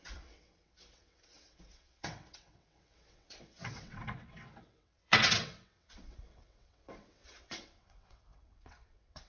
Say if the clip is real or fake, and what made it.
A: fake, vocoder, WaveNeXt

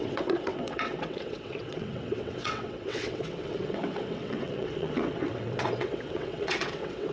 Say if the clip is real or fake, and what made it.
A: fake, vocoder, WaveNeXt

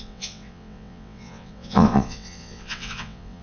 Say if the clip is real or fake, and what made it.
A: fake, vocoder, WaveNeXt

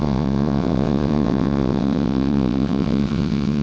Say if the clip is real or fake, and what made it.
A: fake, vocoder, WaveNeXt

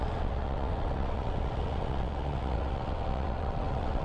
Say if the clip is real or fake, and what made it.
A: fake, vocoder, WaveNeXt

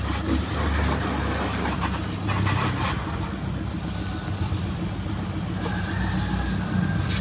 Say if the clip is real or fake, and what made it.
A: real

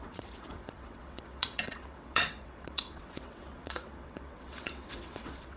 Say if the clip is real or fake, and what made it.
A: fake, vocoder, WaveNeXt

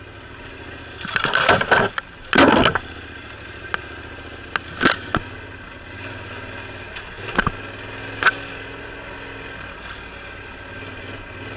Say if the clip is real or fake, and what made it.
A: real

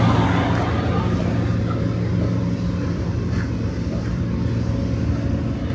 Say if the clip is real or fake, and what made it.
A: real